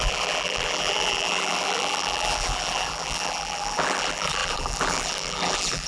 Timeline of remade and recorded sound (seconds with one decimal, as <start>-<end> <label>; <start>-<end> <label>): 0.0-5.9 remade